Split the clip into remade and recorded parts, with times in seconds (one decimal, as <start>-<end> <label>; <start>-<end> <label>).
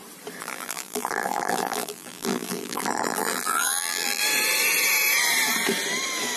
0.0-0.4 recorded; 0.4-4.2 remade; 4.2-6.4 recorded